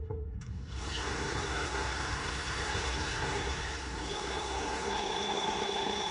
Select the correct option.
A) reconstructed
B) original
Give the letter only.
A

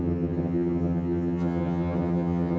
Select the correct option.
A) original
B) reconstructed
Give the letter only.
B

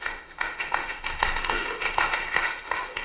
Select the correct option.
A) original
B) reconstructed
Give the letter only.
B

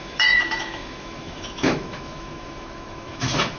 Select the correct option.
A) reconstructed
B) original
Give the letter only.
A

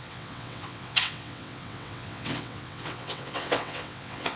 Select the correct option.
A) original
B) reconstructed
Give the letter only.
B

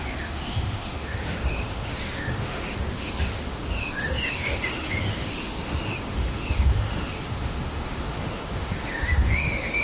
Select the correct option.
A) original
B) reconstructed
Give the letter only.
B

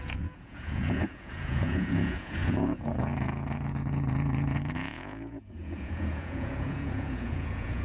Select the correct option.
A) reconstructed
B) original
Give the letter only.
A